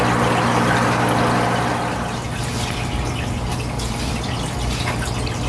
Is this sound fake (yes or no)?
no